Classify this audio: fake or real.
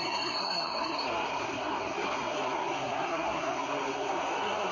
fake